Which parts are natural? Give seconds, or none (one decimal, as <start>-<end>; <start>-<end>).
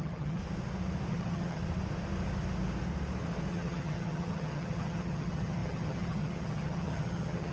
0.4-1.1; 1.6-3.5